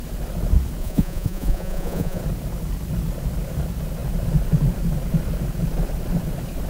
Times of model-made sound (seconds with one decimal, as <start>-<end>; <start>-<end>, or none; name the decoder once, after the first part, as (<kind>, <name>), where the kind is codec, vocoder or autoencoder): 0.8-2.2 (vocoder, Vocos)